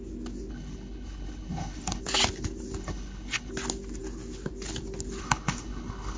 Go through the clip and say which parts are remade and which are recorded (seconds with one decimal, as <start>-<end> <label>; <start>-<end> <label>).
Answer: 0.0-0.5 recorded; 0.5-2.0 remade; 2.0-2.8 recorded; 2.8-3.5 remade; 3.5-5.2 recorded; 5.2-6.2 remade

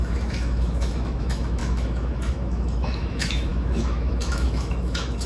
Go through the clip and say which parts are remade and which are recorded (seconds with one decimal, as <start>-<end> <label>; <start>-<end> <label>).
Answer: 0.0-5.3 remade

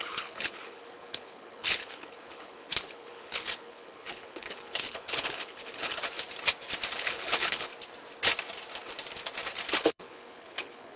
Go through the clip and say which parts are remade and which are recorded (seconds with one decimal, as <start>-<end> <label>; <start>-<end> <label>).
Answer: 0.0-6.1 remade; 6.1-6.9 recorded; 6.9-7.7 remade; 7.7-9.8 recorded; 9.8-11.0 remade

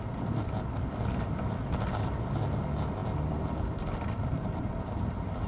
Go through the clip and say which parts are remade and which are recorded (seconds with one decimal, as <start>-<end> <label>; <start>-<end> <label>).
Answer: 0.0-5.5 recorded

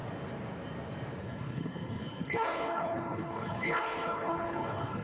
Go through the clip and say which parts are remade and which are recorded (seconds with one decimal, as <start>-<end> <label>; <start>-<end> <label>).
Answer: 0.0-1.2 recorded; 1.2-5.0 remade

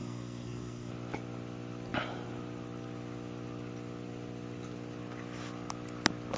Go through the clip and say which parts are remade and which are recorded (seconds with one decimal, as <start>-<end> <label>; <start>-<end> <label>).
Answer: 0.0-0.9 remade; 0.9-6.4 recorded

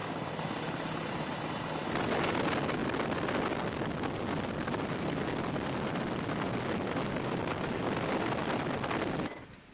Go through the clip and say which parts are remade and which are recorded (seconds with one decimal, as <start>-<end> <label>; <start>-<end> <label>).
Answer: 0.0-1.6 remade; 1.6-9.7 recorded

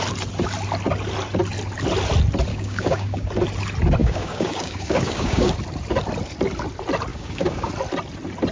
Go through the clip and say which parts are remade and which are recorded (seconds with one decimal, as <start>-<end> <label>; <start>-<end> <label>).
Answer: 0.0-2.5 recorded; 2.5-3.3 remade; 3.3-4.0 recorded; 4.0-5.5 remade; 5.5-7.1 recorded; 7.1-7.7 remade; 7.7-8.5 recorded